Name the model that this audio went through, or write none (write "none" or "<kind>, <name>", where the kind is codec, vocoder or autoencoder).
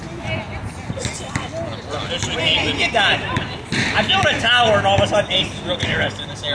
none